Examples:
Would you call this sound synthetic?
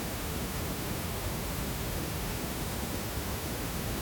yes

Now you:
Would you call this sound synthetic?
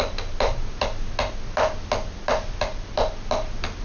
no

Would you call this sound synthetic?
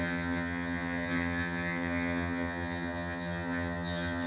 yes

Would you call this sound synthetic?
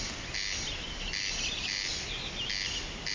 no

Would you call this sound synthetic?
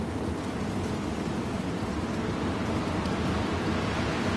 no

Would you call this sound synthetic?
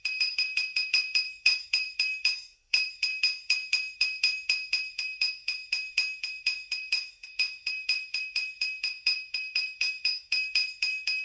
yes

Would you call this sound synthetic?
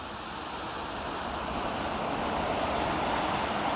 no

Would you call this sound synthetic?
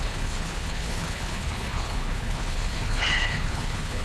yes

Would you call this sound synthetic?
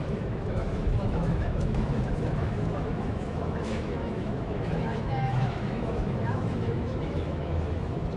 yes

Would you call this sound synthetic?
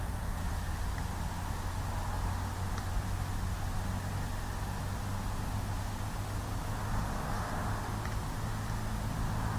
no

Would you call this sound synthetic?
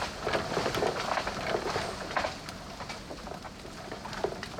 no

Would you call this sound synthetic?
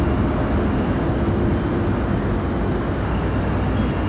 no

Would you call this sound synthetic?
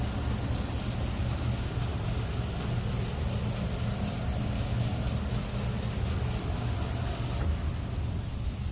no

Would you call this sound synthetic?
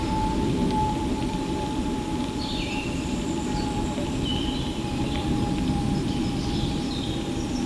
yes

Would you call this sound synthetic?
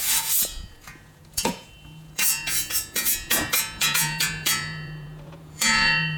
yes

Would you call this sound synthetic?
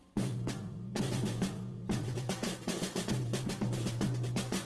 yes